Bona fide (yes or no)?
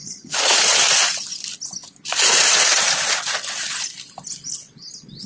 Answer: yes